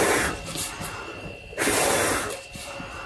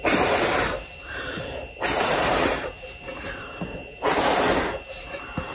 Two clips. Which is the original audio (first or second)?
first